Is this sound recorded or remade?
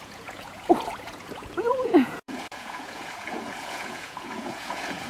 remade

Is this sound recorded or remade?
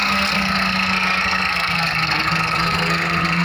remade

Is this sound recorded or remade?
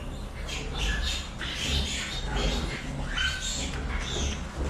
recorded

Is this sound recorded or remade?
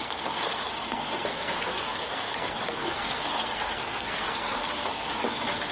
remade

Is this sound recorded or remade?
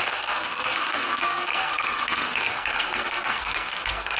remade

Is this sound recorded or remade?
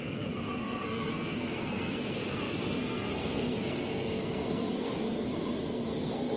remade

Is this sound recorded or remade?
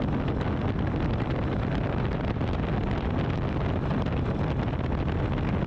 recorded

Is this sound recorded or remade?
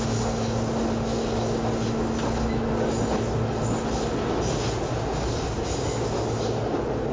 recorded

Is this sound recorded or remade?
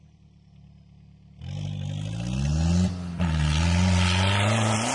recorded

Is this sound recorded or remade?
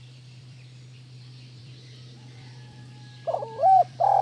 remade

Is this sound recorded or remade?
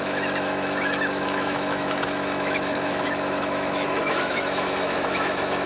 remade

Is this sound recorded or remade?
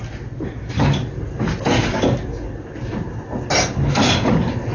recorded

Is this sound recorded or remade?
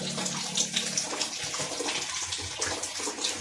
recorded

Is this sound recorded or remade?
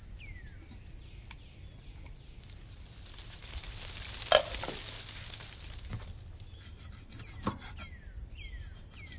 recorded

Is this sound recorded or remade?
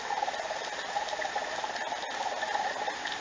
recorded